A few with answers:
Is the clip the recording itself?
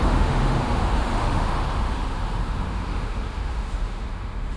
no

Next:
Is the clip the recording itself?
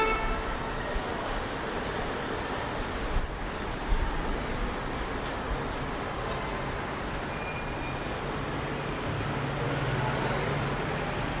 yes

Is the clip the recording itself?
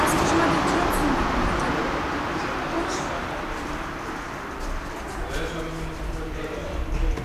yes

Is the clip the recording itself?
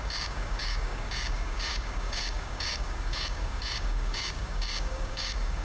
no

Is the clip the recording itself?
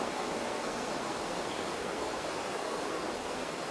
no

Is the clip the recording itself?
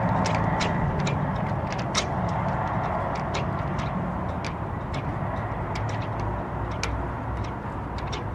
yes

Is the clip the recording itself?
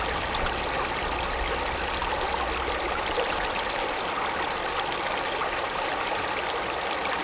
yes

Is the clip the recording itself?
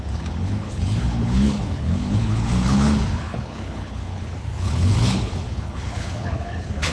no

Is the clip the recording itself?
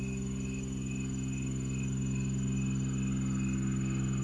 yes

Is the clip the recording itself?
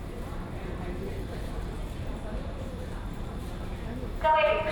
no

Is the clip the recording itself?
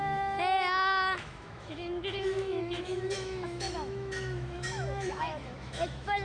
no